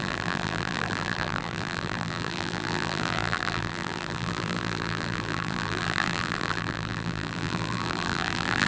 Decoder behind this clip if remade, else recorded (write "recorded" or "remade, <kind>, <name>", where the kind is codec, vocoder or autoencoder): remade, vocoder, BigVGAN v2